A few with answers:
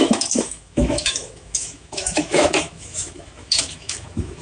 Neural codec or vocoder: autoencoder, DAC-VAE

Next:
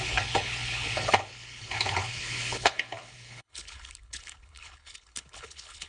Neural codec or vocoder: codec, HILCodec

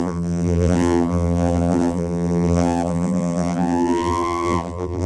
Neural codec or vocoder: vocoder, BigVGAN v2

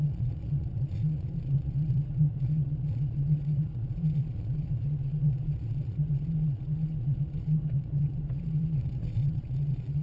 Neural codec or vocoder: vocoder, Vocos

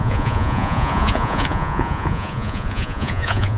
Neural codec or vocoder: vocoder, Vocos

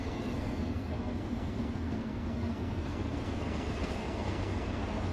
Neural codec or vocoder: codec, SNAC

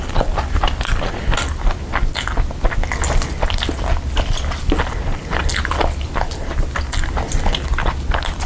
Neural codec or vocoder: none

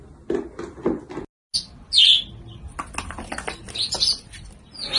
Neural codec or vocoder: none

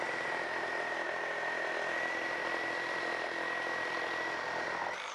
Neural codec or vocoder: none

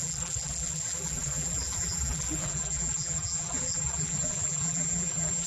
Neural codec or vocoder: vocoder, BigVGAN v2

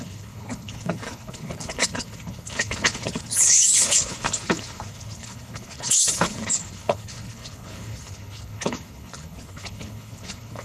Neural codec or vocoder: codec, HILCodec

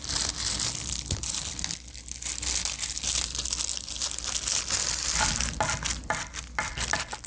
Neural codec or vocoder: none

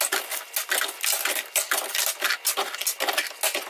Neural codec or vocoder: none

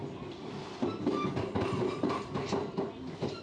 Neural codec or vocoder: none